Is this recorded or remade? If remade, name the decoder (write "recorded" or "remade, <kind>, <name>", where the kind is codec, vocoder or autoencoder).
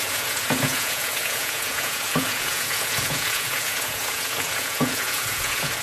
remade, vocoder, Vocos